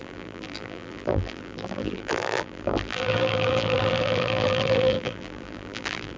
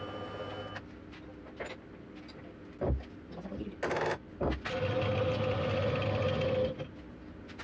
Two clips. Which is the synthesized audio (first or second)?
first